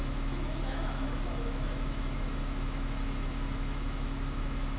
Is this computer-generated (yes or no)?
yes